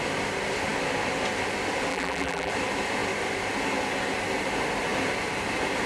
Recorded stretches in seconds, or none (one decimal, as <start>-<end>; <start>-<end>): 0.0-1.9; 2.5-5.9